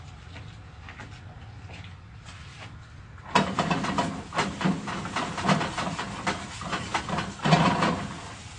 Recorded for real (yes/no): yes